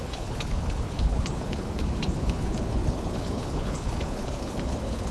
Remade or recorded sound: remade